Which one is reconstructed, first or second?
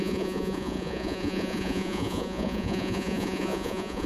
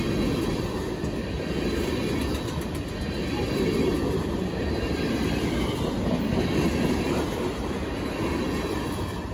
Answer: first